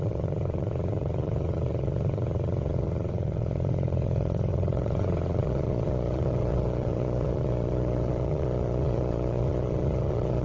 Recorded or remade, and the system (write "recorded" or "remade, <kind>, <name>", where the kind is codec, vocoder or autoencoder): remade, vocoder, Vocos